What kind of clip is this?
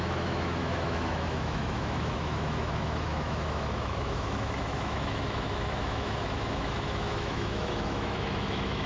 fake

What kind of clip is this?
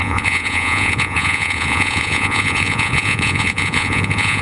fake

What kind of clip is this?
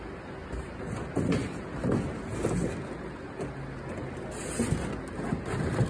real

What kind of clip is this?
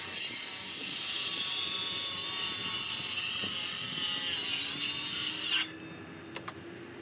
real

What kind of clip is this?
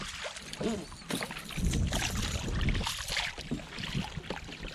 real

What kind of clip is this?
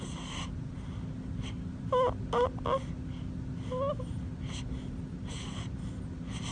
real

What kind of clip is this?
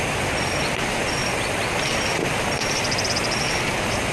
real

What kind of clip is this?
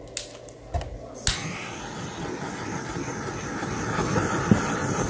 real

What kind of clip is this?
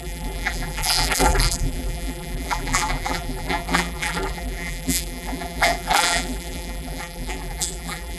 fake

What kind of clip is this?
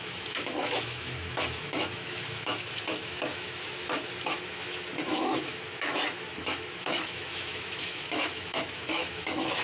fake